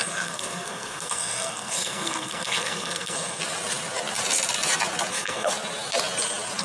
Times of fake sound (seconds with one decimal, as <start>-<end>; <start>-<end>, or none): 0.0-3.4; 5.1-5.5